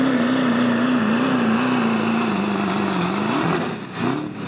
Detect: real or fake real